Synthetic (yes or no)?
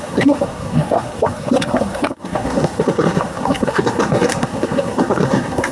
yes